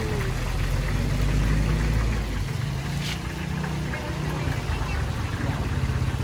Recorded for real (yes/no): yes